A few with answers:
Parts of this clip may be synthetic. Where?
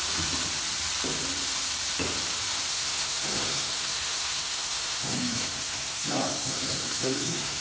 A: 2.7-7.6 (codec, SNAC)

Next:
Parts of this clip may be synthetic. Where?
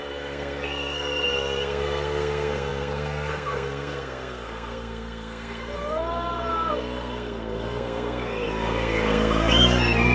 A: 0.0-10.1 (codec, SNAC)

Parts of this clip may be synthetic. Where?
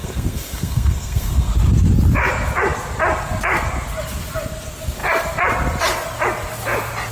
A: 0.0-1.5 (codec, SNAC)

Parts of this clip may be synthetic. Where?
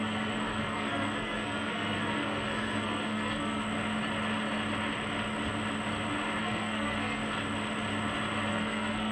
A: 0.0-3.6 (codec, SNAC); 6.4-7.2; 8.5-9.1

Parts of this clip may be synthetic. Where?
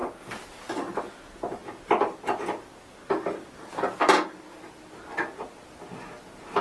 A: none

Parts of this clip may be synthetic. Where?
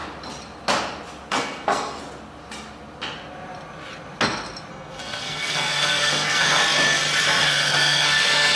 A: 1.3-2.0 (codec, SNAC); 4.7-6.6; 7.4-8.6